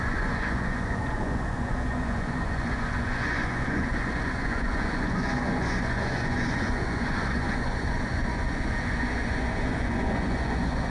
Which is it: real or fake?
fake